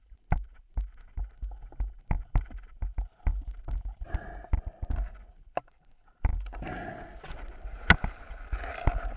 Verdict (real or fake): real